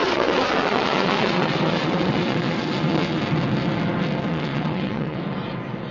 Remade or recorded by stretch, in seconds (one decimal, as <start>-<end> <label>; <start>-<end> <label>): 0.0-3.2 remade; 3.2-4.3 recorded; 4.3-5.2 remade; 5.2-5.9 recorded